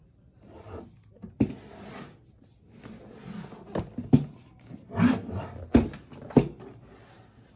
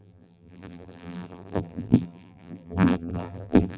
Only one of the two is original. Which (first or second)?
first